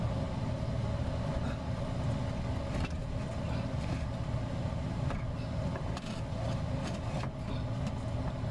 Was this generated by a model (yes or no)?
no